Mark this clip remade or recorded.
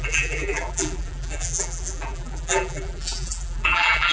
remade